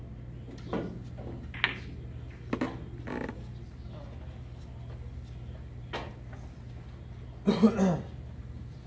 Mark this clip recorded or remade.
recorded